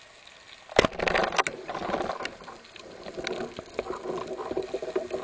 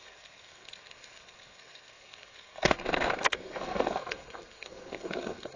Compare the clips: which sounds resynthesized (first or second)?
second